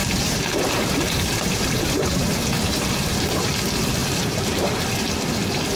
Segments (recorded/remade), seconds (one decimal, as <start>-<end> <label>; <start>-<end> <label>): 0.0-3.5 remade; 3.5-4.0 recorded; 4.0-5.1 remade; 5.1-5.8 recorded